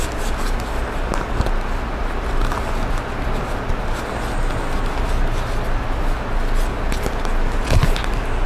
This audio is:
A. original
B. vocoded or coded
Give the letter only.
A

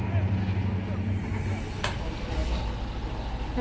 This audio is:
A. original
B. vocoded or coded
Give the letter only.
A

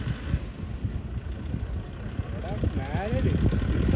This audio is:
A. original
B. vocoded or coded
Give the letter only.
A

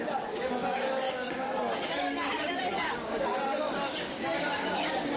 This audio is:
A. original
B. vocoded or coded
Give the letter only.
B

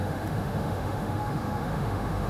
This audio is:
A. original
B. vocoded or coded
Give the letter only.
B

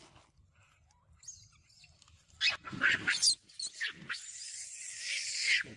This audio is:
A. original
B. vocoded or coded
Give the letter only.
A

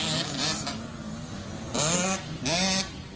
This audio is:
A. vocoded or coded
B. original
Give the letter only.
B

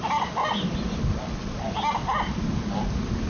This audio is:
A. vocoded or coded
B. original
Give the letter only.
B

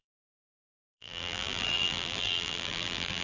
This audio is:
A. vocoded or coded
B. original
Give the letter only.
A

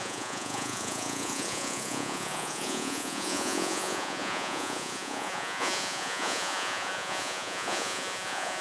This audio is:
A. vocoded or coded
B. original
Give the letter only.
A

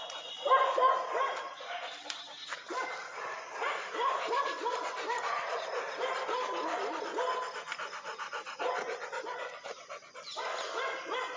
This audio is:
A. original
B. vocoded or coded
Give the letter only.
A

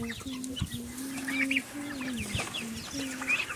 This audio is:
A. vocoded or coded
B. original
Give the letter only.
B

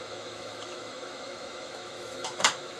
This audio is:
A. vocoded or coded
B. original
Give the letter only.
A